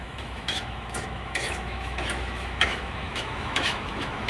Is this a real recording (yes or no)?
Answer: no